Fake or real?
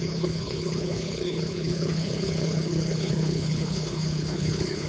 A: fake